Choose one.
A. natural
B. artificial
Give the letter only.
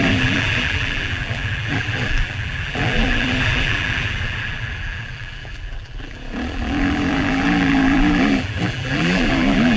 B